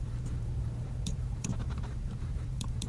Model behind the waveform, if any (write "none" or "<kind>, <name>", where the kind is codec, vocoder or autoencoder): vocoder, BigVGAN v2